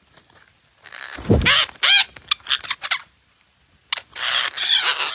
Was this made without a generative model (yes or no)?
yes